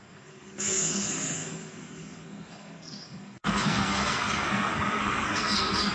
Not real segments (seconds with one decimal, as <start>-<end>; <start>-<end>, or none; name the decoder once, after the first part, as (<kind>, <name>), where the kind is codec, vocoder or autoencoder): 0.0-5.9 (codec, SNAC)